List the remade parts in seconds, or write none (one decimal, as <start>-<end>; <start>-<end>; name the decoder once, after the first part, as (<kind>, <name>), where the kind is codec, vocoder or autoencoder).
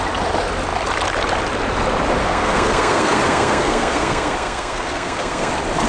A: 2.2-5.5 (codec, SNAC)